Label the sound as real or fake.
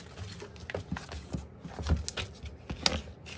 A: real